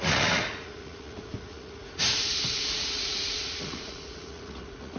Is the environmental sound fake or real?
fake